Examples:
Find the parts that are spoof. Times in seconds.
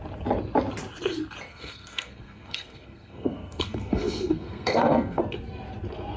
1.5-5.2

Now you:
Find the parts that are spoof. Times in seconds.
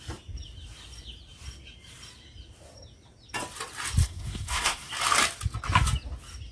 4.0-4.9